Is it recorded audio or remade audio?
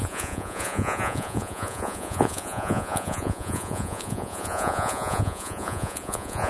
remade